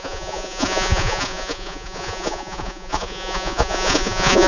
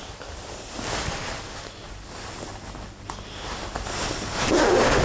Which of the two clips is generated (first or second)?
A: first